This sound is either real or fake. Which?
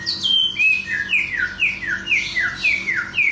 real